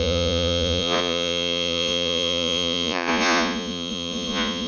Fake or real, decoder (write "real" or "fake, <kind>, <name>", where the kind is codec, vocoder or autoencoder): fake, vocoder, Vocos